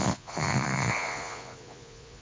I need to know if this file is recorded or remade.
remade